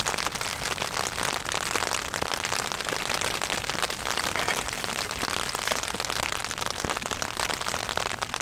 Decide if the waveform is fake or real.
real